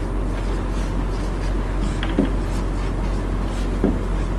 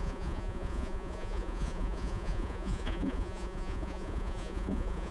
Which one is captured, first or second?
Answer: first